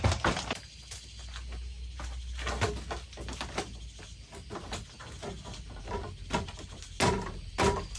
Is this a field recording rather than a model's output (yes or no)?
yes